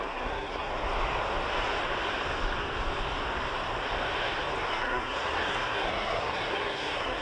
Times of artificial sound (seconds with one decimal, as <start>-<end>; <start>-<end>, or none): 0.0-0.7; 4.7-7.2